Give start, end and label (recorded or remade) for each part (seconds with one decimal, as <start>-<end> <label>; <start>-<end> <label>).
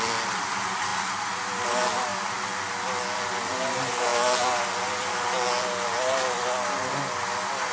0.0-7.7 recorded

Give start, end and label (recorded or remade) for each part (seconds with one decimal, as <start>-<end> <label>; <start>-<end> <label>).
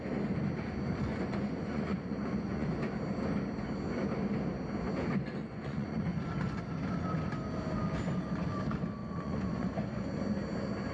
0.0-1.1 recorded; 1.1-2.7 remade; 2.7-5.4 recorded; 5.4-6.0 remade; 6.0-9.0 recorded; 9.0-10.2 remade; 10.2-10.9 recorded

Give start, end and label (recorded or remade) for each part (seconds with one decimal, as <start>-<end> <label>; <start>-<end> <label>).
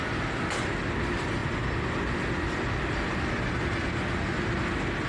0.0-5.1 recorded